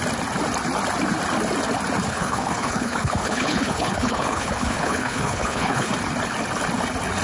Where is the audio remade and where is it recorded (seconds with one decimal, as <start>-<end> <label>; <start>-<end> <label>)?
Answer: 0.0-2.1 recorded; 2.1-5.9 remade; 5.9-7.2 recorded